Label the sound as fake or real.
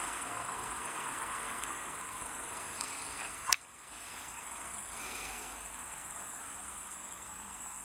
fake